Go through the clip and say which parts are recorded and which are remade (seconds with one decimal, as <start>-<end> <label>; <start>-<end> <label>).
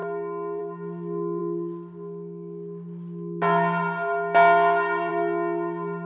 0.0-6.1 recorded